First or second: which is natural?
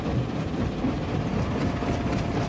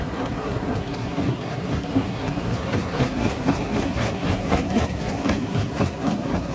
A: first